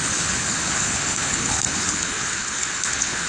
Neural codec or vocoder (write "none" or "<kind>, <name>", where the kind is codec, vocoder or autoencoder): codec, HILCodec